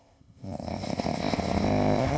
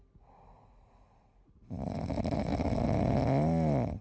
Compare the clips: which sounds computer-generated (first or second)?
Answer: first